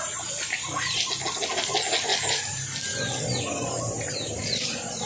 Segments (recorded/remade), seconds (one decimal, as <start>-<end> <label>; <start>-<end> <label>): 0.0-5.1 recorded